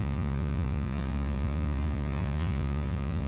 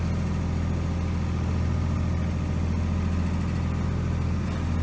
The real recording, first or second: second